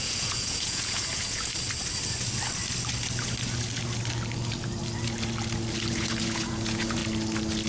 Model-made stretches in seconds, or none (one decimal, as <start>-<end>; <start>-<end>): 0.0-1.5; 5.9-7.0